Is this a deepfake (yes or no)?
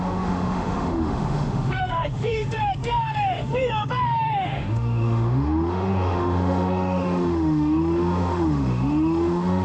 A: yes